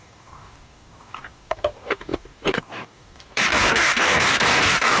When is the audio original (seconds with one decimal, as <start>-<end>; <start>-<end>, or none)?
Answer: none